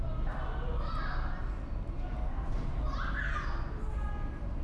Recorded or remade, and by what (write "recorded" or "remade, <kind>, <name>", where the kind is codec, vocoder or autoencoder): recorded